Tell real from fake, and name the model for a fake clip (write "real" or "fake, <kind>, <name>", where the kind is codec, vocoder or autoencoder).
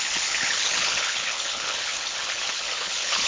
fake, codec, HILCodec